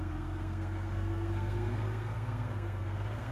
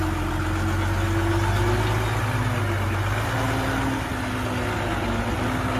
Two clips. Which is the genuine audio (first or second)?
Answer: second